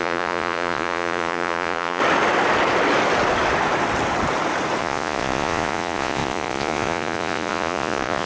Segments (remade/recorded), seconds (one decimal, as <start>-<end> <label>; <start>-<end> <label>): 0.0-2.0 remade; 2.0-4.8 recorded; 4.8-8.3 remade